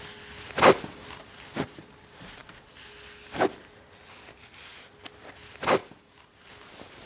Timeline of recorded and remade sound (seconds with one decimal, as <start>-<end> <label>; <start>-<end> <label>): 0.0-5.8 recorded; 5.8-6.5 remade; 6.5-7.1 recorded